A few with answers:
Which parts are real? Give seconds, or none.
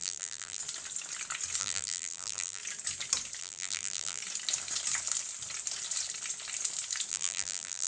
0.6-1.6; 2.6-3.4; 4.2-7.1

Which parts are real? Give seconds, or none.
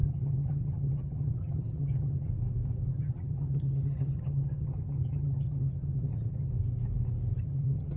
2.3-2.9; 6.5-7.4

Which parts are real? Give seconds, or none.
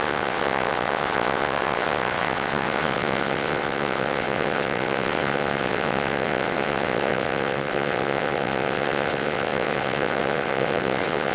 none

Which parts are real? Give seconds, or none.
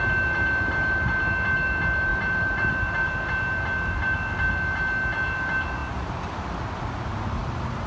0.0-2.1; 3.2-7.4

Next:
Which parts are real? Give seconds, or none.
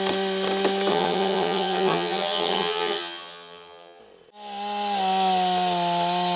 0.0-0.9; 4.0-6.4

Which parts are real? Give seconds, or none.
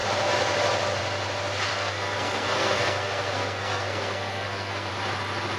0.0-1.7; 4.9-5.6